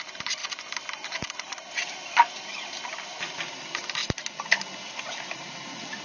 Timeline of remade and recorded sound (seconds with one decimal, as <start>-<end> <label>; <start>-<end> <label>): 0.0-4.0 remade; 4.0-5.5 recorded; 5.5-6.0 remade